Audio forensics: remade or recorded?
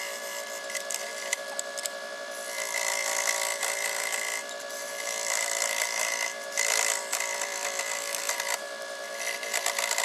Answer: remade